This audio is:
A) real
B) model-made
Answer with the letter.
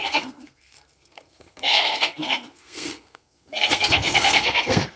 B